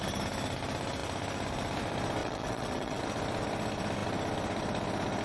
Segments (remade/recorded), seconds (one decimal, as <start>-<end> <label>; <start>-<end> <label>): 0.0-2.2 recorded; 2.2-3.0 remade; 3.0-5.2 recorded